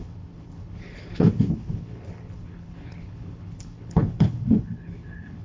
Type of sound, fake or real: fake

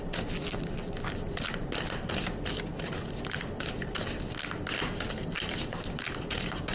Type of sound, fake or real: real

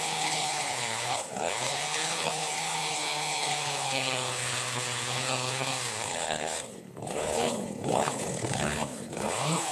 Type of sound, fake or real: fake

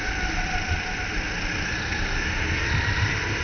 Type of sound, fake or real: real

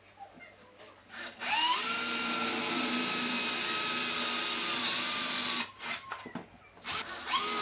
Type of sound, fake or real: real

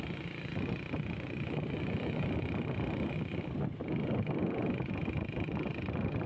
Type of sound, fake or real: real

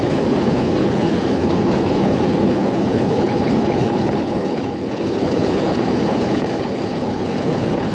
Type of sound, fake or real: fake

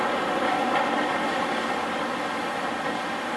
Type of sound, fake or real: real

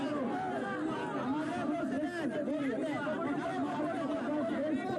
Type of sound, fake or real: real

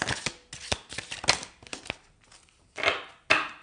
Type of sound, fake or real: real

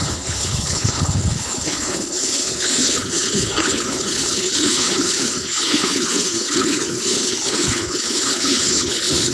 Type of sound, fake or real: fake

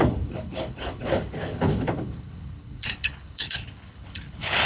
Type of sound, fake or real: fake